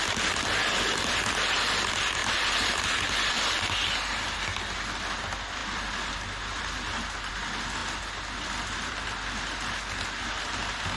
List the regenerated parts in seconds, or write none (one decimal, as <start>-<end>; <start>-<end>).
none

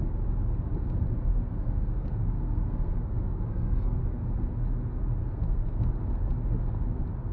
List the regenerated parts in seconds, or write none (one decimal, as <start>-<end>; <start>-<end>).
1.3-4.0; 5.2-5.9

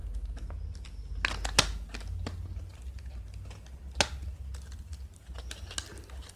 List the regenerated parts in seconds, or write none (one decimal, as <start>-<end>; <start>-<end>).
none

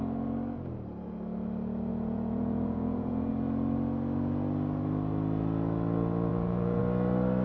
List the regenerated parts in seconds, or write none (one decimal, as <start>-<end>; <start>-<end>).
1.9-3.3; 6.3-6.8

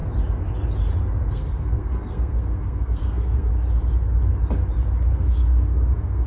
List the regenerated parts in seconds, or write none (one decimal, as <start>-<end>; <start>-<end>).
1.3-3.5; 5.1-6.3

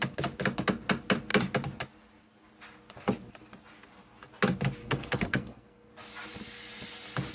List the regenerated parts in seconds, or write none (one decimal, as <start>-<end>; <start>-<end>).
4.8-5.9

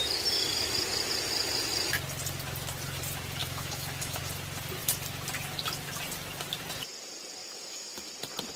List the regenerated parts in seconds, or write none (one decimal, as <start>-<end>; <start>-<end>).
3.4-4.2; 7.4-8.1

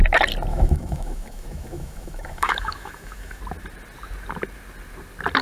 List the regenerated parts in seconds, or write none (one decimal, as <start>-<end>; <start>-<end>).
0.5-3.4